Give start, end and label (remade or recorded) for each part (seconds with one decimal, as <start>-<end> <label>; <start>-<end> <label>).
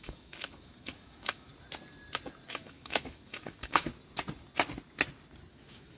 0.0-1.5 remade; 1.5-2.5 recorded; 2.5-3.9 remade; 3.9-5.5 recorded; 5.5-6.0 remade